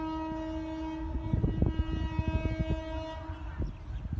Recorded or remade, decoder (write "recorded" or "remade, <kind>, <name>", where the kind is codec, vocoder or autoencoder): recorded